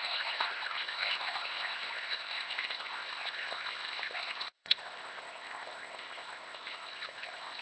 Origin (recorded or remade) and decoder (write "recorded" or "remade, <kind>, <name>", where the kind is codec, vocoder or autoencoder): remade, codec, ZipCodec